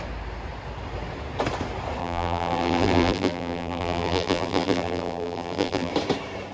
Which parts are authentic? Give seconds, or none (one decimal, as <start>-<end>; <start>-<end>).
0.0-2.0; 5.9-6.5